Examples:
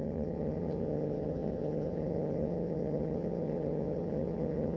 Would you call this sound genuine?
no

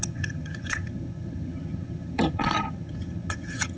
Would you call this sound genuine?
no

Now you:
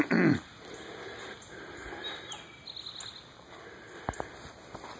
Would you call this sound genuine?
yes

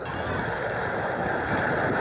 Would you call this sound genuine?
yes